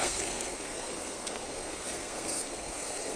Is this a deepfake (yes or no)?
yes